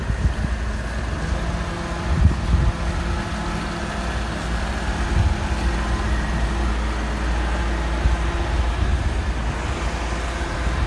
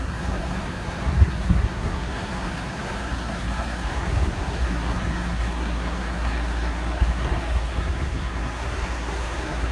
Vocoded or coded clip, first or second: second